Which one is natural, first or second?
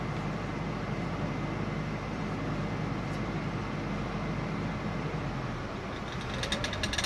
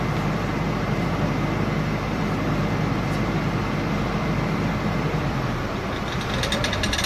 first